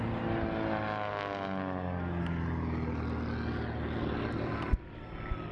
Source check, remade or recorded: recorded